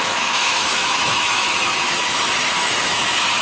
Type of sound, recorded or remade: remade